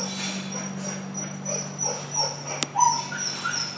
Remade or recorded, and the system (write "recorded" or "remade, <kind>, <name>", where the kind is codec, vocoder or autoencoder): recorded